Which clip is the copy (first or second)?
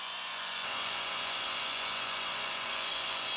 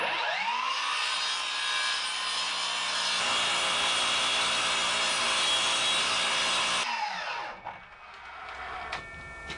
first